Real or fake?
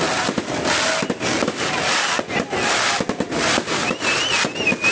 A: real